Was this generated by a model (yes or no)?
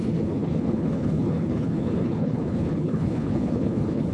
yes